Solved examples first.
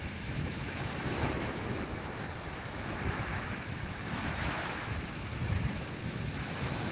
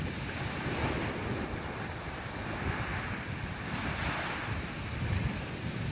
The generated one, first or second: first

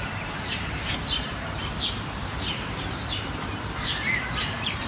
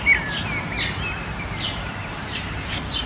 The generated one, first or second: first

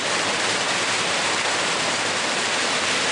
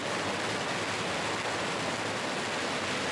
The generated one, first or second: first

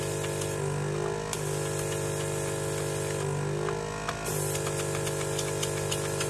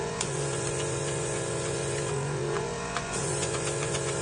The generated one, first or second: second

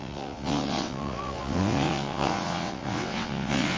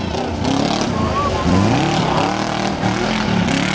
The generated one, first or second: first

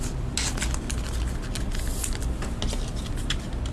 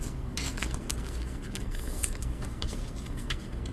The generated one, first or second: second